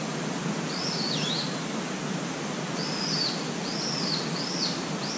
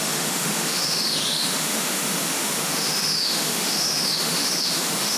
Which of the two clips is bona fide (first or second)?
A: first